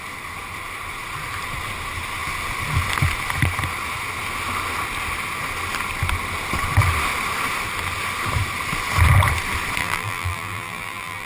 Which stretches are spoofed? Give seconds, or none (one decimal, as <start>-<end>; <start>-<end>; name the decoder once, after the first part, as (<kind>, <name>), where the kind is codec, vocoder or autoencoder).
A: 9.8-11.3 (vocoder, BigVGAN v2)